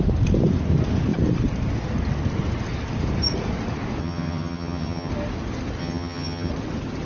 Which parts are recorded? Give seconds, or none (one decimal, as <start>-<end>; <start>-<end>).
0.0-4.0; 5.1-5.8; 6.5-7.0